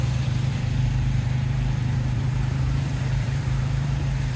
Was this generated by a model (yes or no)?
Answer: yes